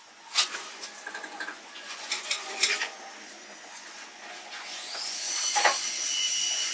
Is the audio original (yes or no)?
no